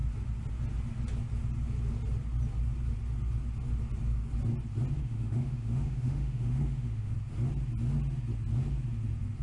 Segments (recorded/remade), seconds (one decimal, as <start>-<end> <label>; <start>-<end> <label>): 0.0-5.0 recorded; 5.0-7.1 remade; 7.1-9.4 recorded